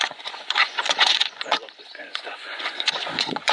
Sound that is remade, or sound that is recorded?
remade